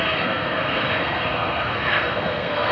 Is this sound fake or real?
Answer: fake